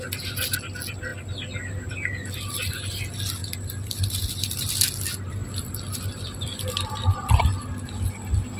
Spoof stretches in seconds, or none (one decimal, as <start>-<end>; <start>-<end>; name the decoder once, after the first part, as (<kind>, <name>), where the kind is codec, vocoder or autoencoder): 3.4-4.7 (vocoder, BigVGAN v2); 5.4-7.4

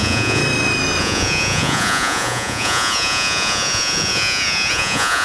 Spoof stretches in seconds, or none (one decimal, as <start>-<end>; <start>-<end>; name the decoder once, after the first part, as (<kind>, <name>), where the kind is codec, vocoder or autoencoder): 0.0-0.4 (vocoder, Vocos); 1.0-5.2

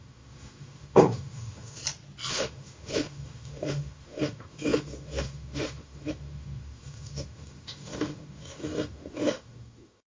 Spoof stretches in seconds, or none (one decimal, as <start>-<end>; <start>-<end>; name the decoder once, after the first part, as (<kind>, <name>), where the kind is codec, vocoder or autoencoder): 0.0-1.8 (autoencoder, DAC-VAE); 2.3-10.1

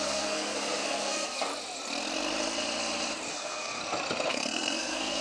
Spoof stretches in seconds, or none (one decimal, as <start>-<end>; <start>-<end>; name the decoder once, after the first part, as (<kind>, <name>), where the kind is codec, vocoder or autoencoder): 0.0-1.5 (codec, SNAC); 3.3-3.8; 4.3-5.2